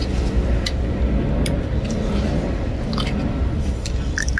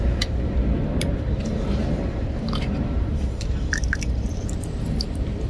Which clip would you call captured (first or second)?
first